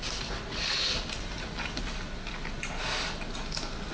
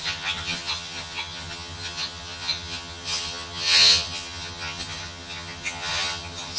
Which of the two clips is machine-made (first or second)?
second